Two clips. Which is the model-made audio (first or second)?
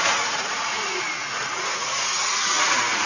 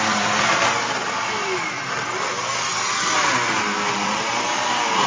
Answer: first